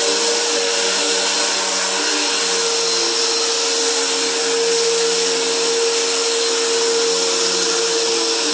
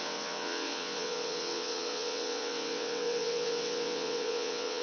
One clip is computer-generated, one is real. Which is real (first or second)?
first